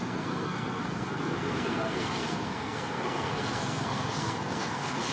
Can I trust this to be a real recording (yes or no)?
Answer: no